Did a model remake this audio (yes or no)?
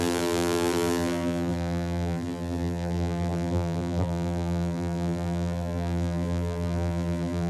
yes